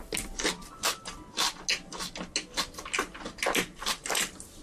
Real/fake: real